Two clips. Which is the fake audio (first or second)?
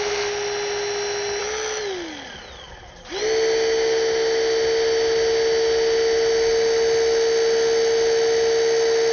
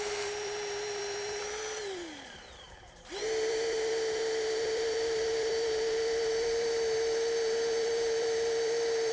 second